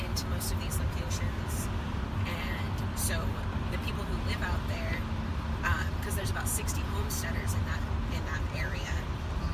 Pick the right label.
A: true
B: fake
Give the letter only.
B